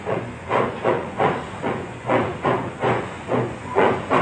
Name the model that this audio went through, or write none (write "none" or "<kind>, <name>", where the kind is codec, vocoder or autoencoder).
vocoder, Vocos